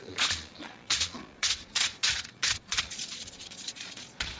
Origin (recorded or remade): remade